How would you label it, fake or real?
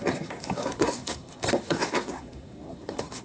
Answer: fake